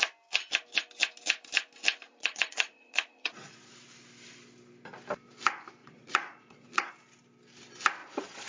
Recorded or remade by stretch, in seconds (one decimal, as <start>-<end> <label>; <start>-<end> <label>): 0.0-2.1 recorded; 2.1-3.7 remade; 3.7-5.8 recorded; 5.8-6.9 remade; 6.9-8.0 recorded; 8.0-8.5 remade